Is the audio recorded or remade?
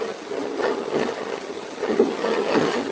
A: remade